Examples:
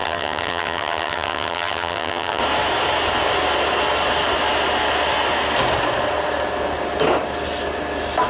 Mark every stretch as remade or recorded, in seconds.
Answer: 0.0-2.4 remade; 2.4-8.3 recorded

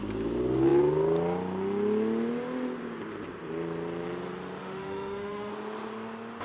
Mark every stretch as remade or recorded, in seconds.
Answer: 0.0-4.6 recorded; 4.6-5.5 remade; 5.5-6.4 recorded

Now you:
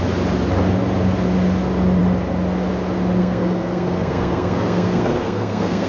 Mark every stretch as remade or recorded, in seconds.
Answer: 0.0-3.2 recorded; 3.2-5.9 remade

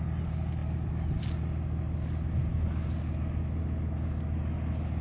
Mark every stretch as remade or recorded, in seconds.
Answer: 0.0-5.0 recorded

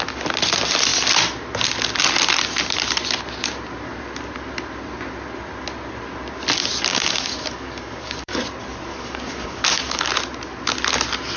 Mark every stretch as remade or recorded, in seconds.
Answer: 0.0-6.9 recorded; 6.9-8.4 remade; 8.4-8.9 recorded; 8.9-10.1 remade; 10.1-11.4 recorded

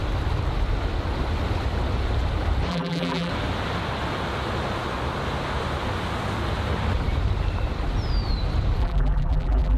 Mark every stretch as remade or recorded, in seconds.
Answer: 0.0-2.7 recorded; 2.7-3.3 remade; 3.3-8.8 recorded; 8.8-9.8 remade

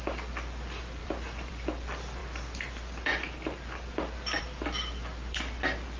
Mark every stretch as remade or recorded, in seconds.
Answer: 0.0-1.0 recorded; 1.0-1.5 remade; 1.5-6.0 recorded

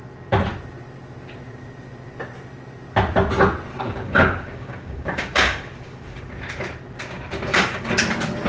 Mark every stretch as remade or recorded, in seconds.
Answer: 0.0-3.7 recorded; 3.7-6.3 remade; 6.3-7.5 recorded; 7.5-8.0 remade; 8.0-8.5 recorded